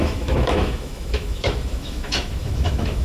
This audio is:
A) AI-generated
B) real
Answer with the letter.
A